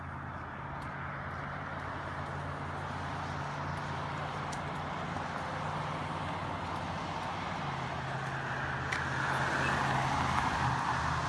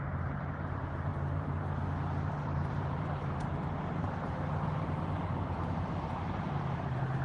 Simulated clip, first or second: second